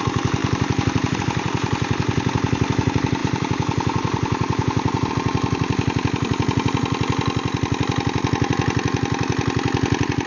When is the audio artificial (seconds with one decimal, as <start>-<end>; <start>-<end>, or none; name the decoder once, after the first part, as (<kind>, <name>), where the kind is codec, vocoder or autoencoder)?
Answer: 0.4-1.2 (vocoder, BigVGAN v2); 3.2-5.1